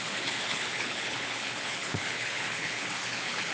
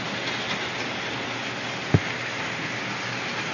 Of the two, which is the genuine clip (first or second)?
second